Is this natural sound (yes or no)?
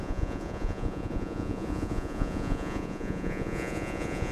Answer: no